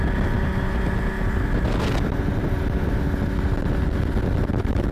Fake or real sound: real